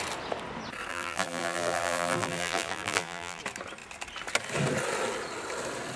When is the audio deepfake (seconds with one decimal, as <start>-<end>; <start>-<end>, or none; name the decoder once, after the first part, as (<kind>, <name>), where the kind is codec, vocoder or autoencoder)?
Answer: 0.9-3.4 (vocoder, BigVGAN v2)

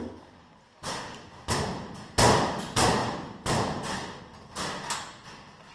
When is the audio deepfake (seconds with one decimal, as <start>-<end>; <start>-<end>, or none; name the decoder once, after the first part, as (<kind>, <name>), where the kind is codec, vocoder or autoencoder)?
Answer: none

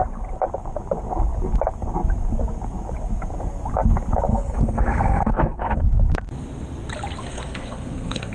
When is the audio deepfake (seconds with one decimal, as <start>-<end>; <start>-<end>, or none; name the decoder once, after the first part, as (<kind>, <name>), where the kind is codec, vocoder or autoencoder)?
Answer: 4.3-5.8 (codec, SNAC); 7.2-8.3